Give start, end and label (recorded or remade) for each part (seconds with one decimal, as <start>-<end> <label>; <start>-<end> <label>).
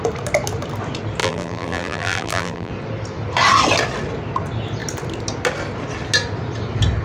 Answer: 0.0-1.2 recorded; 1.2-2.7 remade; 2.7-7.0 recorded